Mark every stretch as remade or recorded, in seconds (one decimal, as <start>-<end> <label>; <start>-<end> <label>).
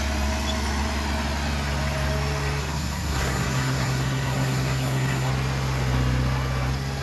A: 0.0-2.6 recorded; 2.6-5.3 remade; 5.3-7.0 recorded